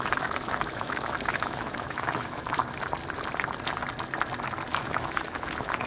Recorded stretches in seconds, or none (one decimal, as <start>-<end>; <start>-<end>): 2.6-4.7